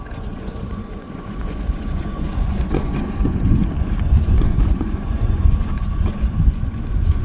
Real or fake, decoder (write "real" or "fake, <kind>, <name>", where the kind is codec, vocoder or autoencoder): fake, vocoder, Vocos